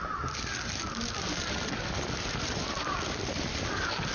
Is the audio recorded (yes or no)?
yes